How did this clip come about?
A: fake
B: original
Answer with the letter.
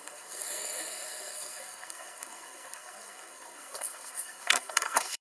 A